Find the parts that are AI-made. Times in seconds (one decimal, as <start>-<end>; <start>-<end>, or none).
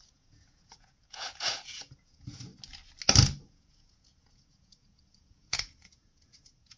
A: 0.0-2.5; 3.5-6.8